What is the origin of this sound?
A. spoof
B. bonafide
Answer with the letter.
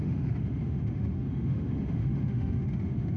A